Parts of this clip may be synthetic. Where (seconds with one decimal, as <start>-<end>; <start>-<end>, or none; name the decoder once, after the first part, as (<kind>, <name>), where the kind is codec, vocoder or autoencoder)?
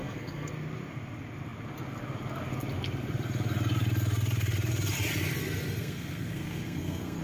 0.0-0.5 (codec, SNAC); 5.8-7.2